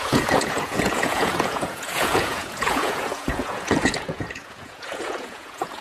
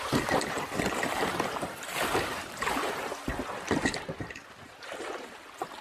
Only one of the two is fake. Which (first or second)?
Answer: first